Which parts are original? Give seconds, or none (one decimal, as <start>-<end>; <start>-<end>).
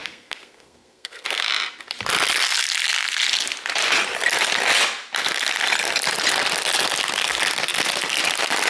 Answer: 1.5-8.7